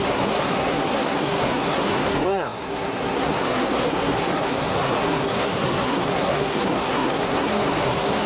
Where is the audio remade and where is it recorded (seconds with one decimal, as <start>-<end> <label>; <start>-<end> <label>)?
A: 0.0-8.3 remade